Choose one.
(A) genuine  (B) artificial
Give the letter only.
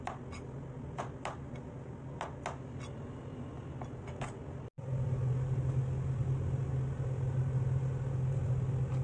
A